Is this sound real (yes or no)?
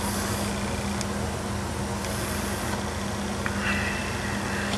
yes